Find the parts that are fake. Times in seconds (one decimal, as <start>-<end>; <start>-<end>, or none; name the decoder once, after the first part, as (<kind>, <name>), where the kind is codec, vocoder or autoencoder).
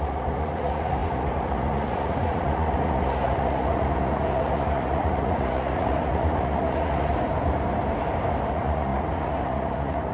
0.0-7.1 (vocoder, Vocos); 8.5-10.1